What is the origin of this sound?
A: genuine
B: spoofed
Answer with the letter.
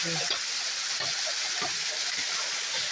A